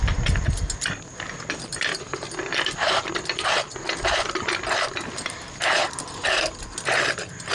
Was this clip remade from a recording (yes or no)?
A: no